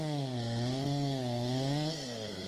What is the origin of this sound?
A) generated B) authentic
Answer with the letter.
A